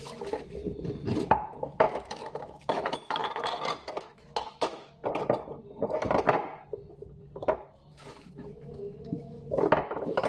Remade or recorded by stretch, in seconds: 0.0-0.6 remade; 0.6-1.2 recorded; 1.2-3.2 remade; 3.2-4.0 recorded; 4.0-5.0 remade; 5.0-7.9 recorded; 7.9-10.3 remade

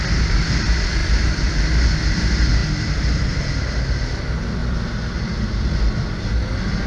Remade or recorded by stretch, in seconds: 0.0-1.0 recorded; 1.0-1.5 remade; 1.5-2.6 recorded; 2.6-3.3 remade; 3.3-4.6 recorded; 4.6-6.1 remade; 6.1-6.9 recorded

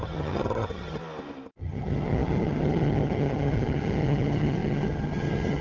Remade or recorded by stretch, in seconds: 0.0-1.0 remade; 1.0-1.6 recorded; 1.6-5.6 remade

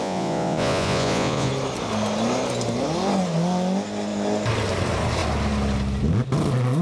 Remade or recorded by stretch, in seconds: 0.0-1.5 remade; 1.5-6.8 recorded

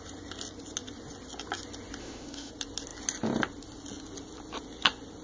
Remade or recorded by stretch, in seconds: 0.0-2.0 recorded; 2.0-2.5 remade; 2.5-5.2 recorded

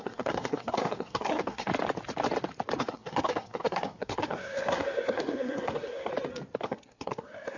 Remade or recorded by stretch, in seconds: 0.0-1.7 remade; 1.7-2.8 recorded; 2.8-6.1 remade; 6.1-6.6 recorded; 6.6-7.6 remade